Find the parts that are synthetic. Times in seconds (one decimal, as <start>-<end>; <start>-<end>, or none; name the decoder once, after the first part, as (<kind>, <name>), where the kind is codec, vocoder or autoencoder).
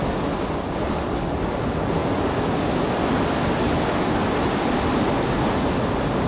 none